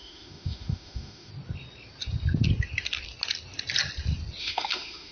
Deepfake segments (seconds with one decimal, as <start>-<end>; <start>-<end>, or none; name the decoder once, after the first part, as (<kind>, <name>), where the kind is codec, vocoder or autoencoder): 0.0-1.3 (autoencoder, DAC-VAE); 4.4-5.1